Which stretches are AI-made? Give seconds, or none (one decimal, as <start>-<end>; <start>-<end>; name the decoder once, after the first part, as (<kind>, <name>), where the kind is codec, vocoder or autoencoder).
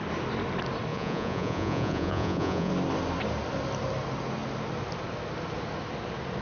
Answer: 0.9-2.7 (vocoder, Vocos)